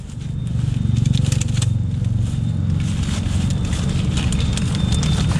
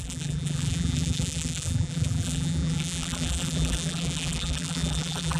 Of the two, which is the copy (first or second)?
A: second